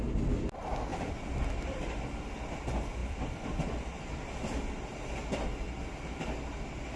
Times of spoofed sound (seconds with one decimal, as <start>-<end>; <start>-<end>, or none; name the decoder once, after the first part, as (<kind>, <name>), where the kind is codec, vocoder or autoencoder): 0.9-2.1 (vocoder, BigVGAN v2); 3.0-3.7